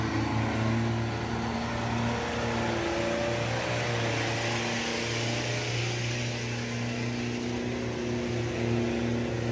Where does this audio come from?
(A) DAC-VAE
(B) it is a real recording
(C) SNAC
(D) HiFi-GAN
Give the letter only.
B